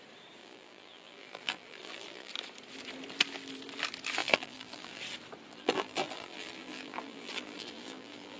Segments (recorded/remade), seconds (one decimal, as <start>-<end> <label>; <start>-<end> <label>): 0.0-0.4 recorded; 0.4-2.3 remade; 2.3-4.2 recorded; 4.2-5.0 remade; 5.0-5.5 recorded; 5.5-8.4 remade